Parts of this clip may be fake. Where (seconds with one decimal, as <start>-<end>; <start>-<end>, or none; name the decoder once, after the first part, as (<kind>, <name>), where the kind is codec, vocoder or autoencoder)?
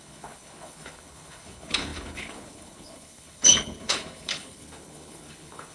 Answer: 0.0-5.7 (codec, HILCodec)